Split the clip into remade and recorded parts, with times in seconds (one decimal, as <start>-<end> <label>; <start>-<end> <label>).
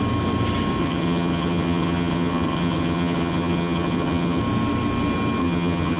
0.0-0.8 recorded; 0.8-4.4 remade; 4.4-5.4 recorded; 5.4-6.0 remade